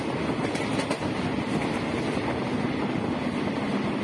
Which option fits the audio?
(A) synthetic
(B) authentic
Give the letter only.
B